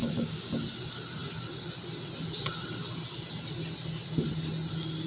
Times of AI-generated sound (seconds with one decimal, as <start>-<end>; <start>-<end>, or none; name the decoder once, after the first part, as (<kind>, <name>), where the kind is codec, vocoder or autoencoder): 0.0-0.5 (codec, DAC)